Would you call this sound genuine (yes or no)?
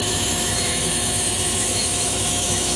no